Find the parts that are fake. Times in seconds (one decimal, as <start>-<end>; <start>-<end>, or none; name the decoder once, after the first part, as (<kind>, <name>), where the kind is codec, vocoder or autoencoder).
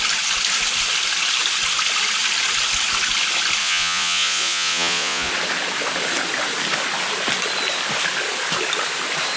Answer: 3.6-5.3 (vocoder, Vocos)